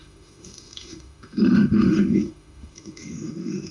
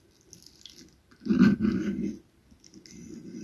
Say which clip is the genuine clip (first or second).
second